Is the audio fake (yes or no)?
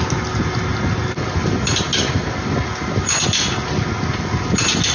no